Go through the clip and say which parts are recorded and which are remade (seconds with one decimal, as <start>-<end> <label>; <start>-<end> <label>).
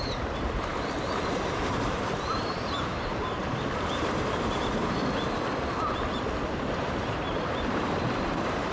0.0-3.1 remade; 3.1-3.8 recorded; 3.8-5.0 remade; 5.0-6.7 recorded; 6.7-8.7 remade